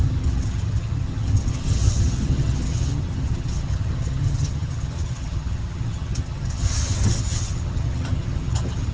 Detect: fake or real fake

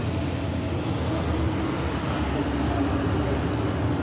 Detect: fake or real real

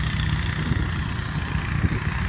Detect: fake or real real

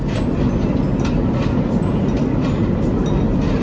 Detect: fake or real real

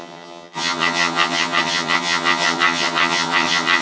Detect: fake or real fake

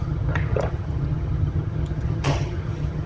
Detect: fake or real fake